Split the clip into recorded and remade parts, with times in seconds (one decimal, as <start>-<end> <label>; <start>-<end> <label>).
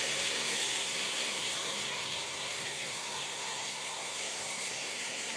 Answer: 0.0-5.4 remade